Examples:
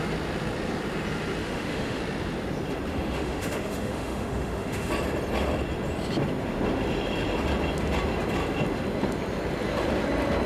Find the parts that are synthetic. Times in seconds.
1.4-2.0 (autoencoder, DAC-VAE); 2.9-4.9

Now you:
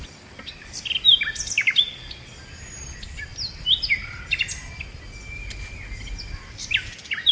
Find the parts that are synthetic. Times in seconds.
none

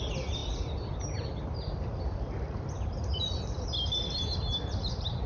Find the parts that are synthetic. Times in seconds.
none

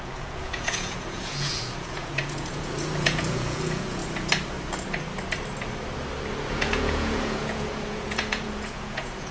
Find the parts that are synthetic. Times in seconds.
0.0-4.0 (vocoder, Vocos); 6.5-9.3

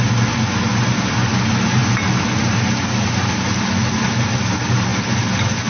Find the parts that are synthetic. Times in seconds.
none

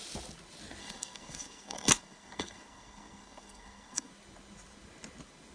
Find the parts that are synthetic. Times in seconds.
0.8-4.1 (codec, SNAC)